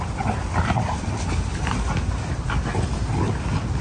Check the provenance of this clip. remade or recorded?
recorded